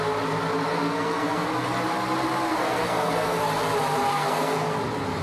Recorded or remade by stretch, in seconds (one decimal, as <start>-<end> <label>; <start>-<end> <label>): 0.0-0.7 recorded; 0.7-1.5 remade; 1.5-2.5 recorded; 2.5-3.4 remade; 3.4-4.1 recorded; 4.1-4.8 remade; 4.8-5.2 recorded